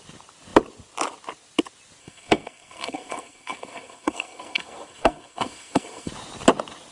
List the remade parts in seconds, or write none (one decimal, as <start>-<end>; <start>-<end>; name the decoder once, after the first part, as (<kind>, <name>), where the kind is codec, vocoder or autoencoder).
2.0-6.1 (codec, SNAC)